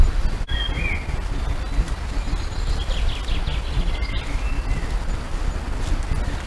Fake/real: real